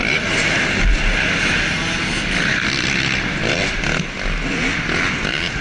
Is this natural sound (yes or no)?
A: yes